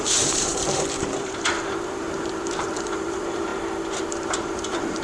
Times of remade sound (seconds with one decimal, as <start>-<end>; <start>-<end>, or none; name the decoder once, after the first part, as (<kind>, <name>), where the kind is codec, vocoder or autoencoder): 0.0-3.5 (vocoder, BigVGAN v2); 4.1-5.0